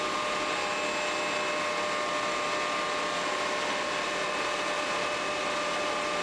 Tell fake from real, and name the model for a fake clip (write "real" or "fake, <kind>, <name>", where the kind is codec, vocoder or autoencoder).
real